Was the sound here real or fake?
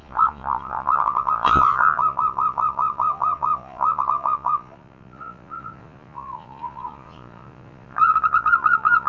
fake